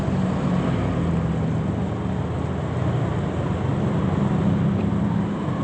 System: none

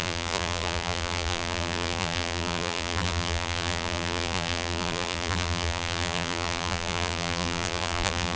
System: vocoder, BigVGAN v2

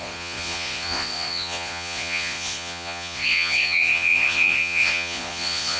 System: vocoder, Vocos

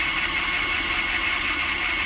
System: none